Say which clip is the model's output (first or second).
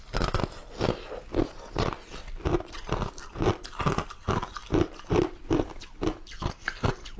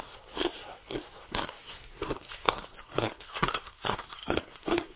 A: second